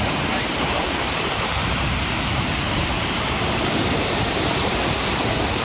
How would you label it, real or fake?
fake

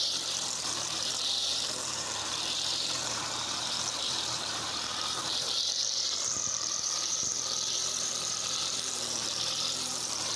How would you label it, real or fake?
fake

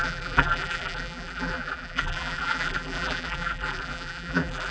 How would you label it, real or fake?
fake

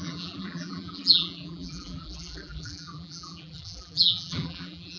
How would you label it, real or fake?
fake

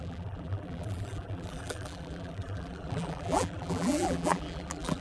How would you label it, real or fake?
fake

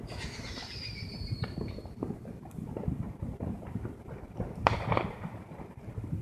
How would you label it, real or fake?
fake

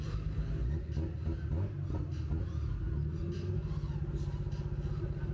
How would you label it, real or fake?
real